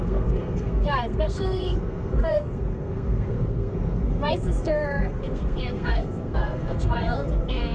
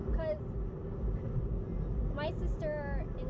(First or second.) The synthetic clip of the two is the first